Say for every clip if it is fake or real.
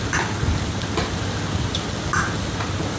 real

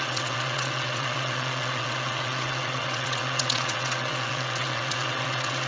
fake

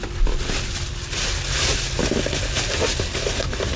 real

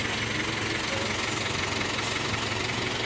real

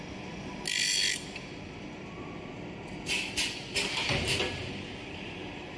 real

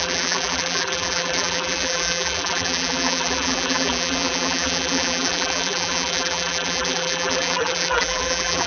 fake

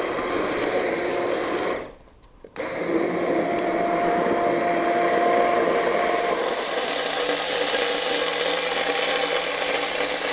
real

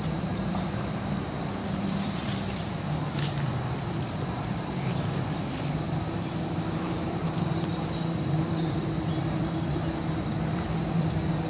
fake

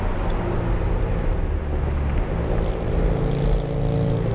real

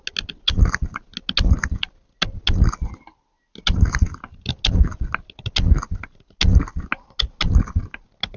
real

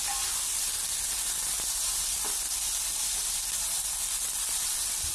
real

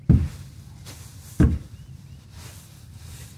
real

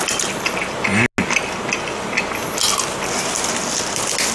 real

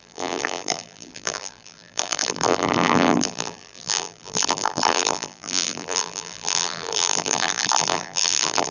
fake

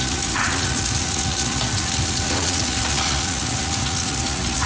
fake